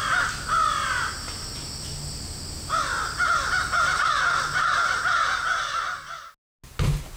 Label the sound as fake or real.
real